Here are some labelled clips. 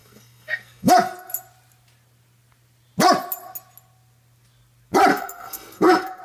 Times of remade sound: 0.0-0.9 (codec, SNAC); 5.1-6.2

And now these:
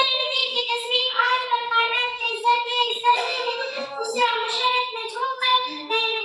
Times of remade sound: 0.0-4.4 (codec, SNAC); 5.1-6.2